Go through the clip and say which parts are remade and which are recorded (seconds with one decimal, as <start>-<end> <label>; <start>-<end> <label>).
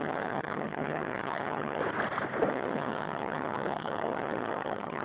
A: 0.0-1.8 remade; 1.8-2.5 recorded; 2.5-5.0 remade